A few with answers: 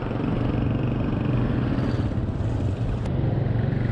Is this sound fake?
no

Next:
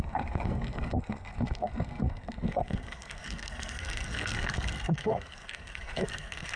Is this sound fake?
yes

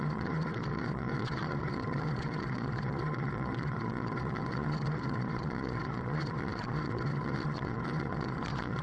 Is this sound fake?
yes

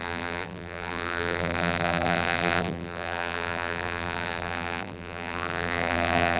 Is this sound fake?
yes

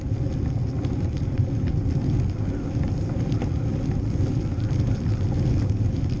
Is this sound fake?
no